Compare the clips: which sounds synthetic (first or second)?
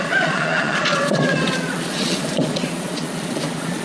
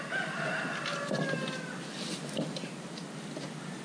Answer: first